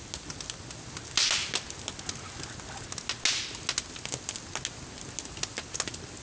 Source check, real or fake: real